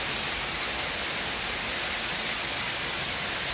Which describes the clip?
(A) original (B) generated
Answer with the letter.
A